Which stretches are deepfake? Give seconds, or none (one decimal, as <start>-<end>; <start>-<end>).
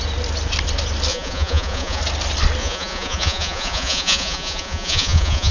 1.1-2.0; 2.6-5.5